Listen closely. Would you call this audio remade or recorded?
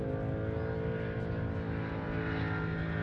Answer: recorded